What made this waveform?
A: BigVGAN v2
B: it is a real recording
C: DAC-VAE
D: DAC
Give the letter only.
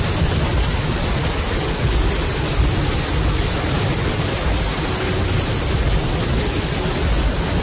B